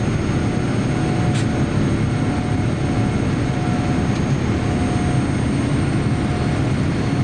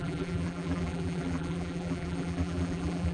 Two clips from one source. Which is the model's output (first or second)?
second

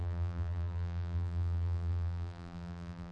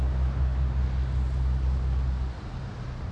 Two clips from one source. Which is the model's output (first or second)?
first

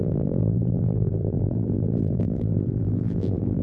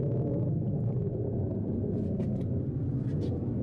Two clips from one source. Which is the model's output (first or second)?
first